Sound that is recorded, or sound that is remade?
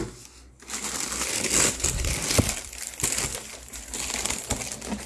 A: recorded